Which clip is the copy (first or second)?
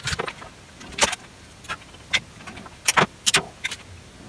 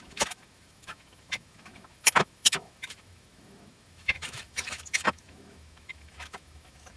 second